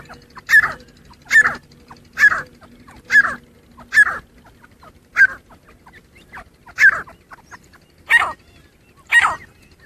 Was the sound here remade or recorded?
recorded